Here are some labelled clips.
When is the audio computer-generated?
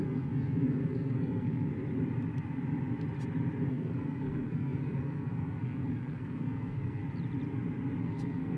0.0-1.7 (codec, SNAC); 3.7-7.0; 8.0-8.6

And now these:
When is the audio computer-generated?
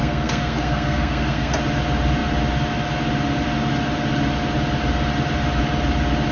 0.0-1.5 (codec, SNAC)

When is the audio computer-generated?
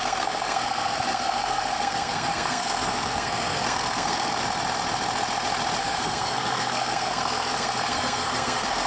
0.0-4.4 (codec, SNAC); 5.8-8.9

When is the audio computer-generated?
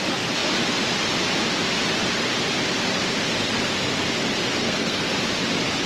4.6-5.1 (codec, SNAC)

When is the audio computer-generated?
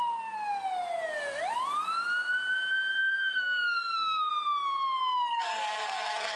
3.0-4.3 (codec, SNAC); 5.3-6.4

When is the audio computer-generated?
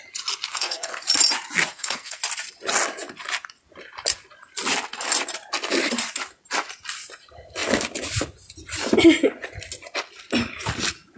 0.5-1.0 (codec, SNAC); 1.7-2.2